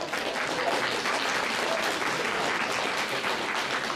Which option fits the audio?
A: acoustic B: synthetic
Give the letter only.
A